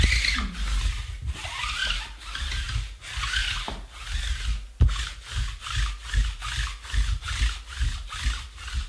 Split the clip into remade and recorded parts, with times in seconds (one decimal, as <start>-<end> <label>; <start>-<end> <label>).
0.0-8.9 recorded